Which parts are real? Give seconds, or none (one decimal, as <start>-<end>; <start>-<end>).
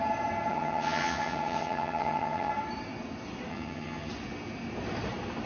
0.0-0.5; 2.5-3.5; 4.1-5.5